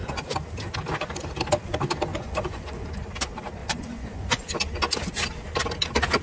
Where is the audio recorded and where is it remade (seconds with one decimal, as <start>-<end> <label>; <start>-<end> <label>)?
0.0-2.1 recorded; 2.1-2.9 remade; 2.9-3.6 recorded; 3.6-4.5 remade; 4.5-6.2 recorded